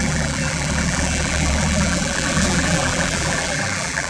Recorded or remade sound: remade